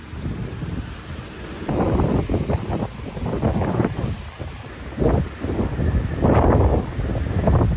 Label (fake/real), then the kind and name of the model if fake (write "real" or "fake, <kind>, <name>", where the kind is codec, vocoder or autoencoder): real